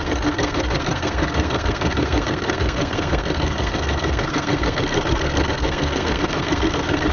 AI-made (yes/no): yes